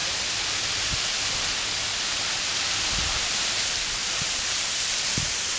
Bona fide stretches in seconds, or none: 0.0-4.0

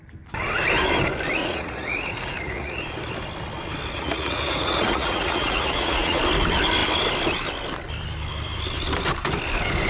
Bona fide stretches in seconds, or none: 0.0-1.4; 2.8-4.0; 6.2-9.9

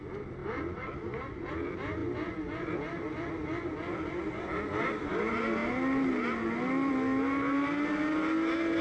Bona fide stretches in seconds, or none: 0.0-8.8

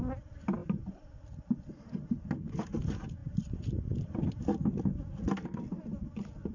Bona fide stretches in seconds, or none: 0.0-6.5

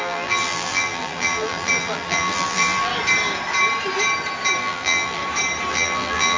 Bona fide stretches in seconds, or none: 2.9-4.6; 5.2-5.7